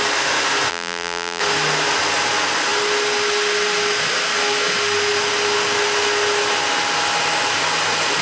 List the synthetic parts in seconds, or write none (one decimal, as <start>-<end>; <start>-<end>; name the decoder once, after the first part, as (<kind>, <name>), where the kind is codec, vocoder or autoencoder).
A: 0.7-1.4 (vocoder, BigVGAN v2)